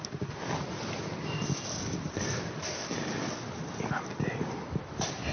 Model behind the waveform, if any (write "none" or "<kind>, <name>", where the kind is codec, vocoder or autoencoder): none